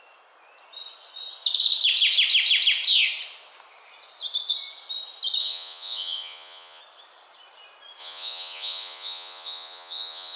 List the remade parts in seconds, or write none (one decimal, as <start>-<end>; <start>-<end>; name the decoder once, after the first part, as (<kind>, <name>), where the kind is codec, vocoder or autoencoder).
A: 5.4-6.8 (vocoder, Vocos); 8.0-10.4